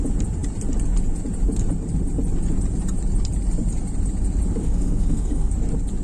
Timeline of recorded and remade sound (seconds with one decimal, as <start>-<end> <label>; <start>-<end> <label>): 0.0-4.6 recorded; 4.6-5.5 remade; 5.5-6.0 recorded